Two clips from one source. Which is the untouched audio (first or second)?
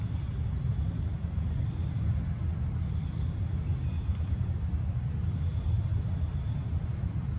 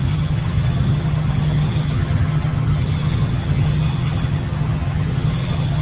first